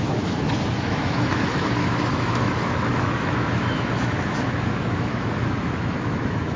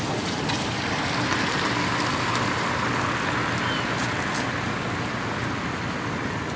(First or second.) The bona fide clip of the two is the second